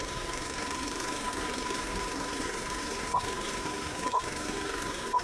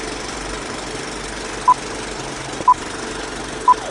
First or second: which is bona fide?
second